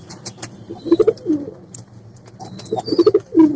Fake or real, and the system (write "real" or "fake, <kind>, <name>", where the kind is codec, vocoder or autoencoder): real